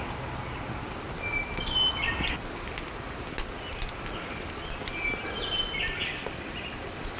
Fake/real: real